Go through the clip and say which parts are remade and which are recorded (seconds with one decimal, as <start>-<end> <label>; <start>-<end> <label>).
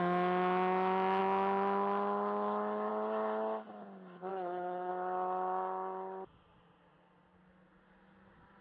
0.0-4.3 recorded; 4.3-4.9 remade; 4.9-8.6 recorded